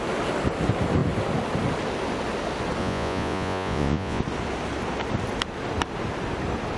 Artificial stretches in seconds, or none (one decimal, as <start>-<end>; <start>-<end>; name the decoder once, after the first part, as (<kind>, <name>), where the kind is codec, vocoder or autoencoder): 2.8-4.2 (vocoder, Vocos)